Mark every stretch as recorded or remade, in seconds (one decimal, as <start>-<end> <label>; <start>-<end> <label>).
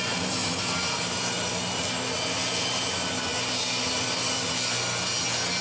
0.0-5.6 recorded